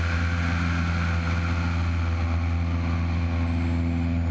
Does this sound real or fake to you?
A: real